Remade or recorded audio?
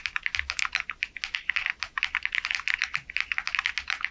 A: recorded